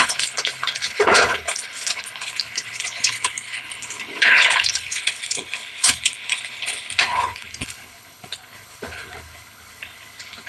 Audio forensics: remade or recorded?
remade